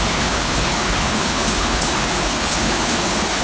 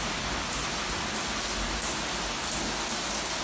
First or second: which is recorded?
second